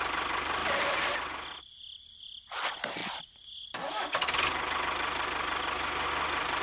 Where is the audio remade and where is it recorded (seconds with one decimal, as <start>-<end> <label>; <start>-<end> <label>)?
0.0-6.6 recorded